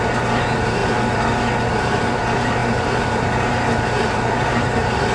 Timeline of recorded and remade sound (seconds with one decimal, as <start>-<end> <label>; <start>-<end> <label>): 0.0-0.8 remade; 0.8-1.5 recorded; 1.5-5.1 remade